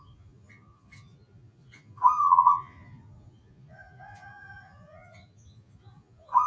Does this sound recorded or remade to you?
remade